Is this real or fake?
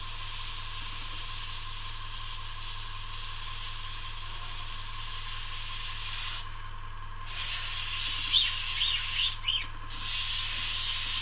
real